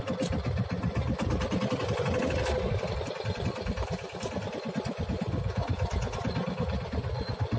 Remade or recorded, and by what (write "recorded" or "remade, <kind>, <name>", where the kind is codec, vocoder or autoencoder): recorded